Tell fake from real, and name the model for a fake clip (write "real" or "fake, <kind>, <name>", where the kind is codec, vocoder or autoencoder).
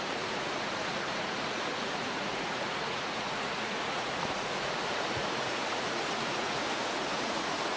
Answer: fake, vocoder, Vocos